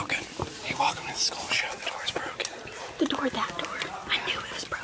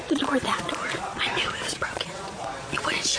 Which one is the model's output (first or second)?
second